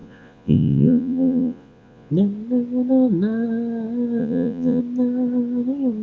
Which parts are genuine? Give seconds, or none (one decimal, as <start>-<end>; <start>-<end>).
2.1-4.2; 4.8-6.0